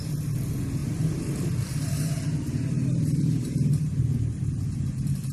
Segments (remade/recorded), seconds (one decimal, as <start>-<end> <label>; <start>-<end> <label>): 0.0-0.8 recorded; 0.8-4.0 remade; 4.0-5.3 recorded